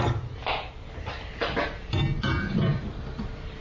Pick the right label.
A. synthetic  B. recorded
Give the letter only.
A